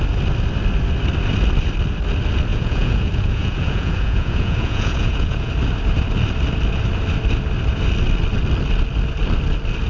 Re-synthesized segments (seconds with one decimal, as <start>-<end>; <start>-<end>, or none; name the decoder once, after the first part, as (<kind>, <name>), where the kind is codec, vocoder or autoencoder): 2.5-5.5 (vocoder, Vocos)